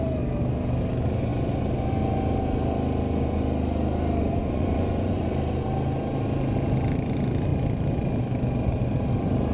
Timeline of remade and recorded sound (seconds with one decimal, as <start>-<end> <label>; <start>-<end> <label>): 0.0-4.2 recorded; 4.2-5.2 remade; 5.2-9.5 recorded